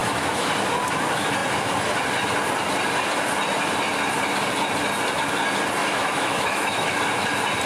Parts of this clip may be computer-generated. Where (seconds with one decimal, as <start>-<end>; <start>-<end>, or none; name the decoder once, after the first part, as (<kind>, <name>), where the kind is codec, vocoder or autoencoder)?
0.0-0.5 (autoencoder, DAC-VAE); 5.8-7.0